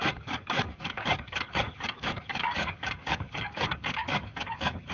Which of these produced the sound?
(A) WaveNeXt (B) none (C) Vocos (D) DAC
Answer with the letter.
D